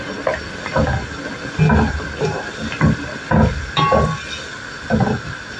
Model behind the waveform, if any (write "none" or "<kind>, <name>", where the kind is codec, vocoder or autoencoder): none